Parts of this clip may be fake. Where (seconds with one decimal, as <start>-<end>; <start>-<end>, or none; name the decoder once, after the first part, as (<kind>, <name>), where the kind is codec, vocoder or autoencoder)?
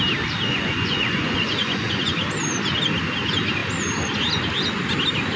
0.5-2.1 (vocoder, Vocos)